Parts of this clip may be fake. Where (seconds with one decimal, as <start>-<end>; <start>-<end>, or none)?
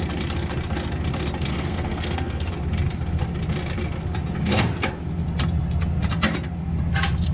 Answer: 1.5-2.5